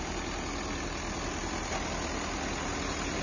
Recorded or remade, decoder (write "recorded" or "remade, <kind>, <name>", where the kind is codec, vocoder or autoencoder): recorded